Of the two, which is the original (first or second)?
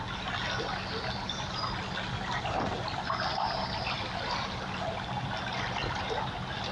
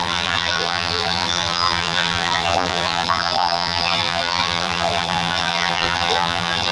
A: first